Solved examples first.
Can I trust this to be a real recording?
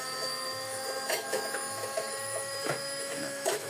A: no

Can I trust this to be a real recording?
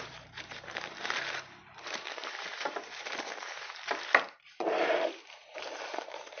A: no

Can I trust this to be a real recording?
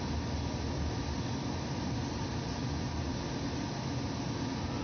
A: yes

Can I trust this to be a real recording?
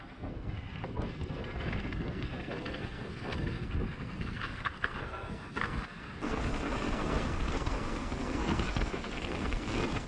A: no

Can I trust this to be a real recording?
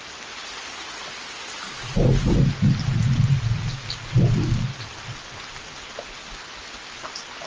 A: yes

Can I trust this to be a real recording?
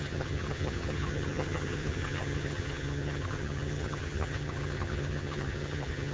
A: no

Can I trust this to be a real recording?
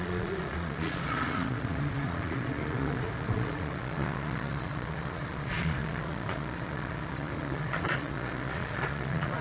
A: no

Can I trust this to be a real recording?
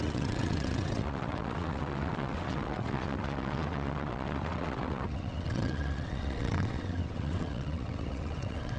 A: no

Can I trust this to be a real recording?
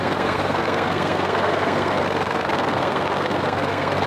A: no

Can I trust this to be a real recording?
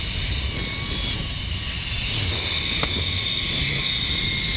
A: yes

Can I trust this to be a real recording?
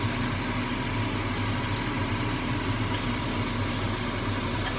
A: yes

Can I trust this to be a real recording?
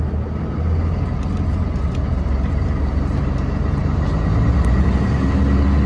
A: yes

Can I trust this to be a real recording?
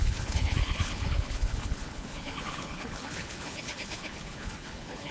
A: no